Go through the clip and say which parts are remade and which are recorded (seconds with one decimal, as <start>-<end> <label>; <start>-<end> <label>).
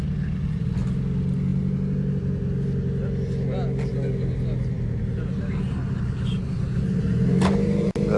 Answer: 0.0-8.2 recorded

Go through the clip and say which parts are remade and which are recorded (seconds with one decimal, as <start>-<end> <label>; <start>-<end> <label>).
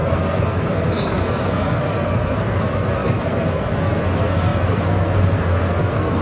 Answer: 0.0-6.2 remade